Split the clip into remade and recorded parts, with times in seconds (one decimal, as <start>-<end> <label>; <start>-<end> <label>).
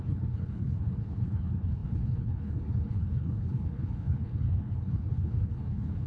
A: 0.0-6.1 remade